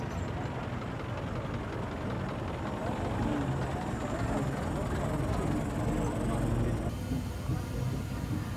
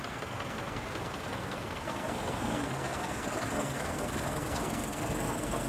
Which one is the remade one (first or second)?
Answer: second